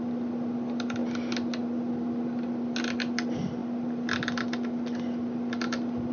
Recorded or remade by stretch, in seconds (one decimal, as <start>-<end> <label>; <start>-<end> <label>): 0.0-6.1 recorded